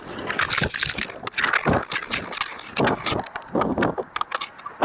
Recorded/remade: recorded